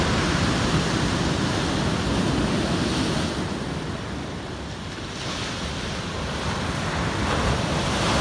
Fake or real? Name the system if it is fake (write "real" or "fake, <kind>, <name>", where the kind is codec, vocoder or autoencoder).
real